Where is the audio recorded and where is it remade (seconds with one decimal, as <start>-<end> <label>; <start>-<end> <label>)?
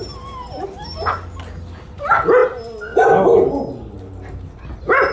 0.0-5.1 recorded